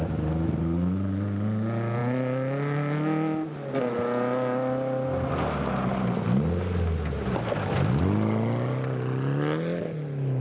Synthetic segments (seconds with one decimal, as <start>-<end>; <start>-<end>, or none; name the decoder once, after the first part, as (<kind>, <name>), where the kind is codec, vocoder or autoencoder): none